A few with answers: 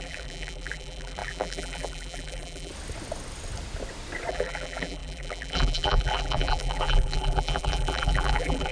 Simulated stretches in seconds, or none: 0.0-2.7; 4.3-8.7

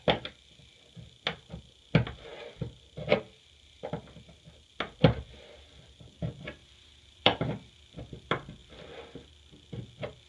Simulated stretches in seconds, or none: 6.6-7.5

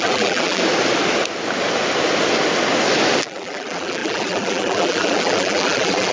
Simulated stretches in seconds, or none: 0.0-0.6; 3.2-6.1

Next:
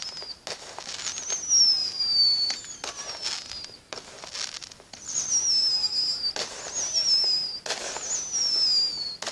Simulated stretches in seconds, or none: 1.8-2.5; 4.6-5.3